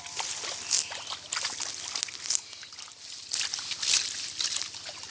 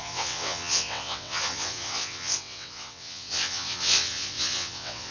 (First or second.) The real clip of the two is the first